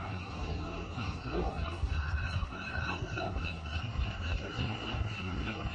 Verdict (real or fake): fake